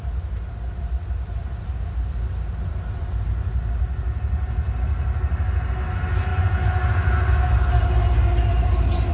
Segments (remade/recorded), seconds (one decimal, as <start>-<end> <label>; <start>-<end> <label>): 0.0-9.1 recorded